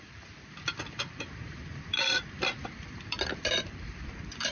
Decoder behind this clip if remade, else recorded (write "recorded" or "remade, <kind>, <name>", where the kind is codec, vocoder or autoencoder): remade, vocoder, BigVGAN v2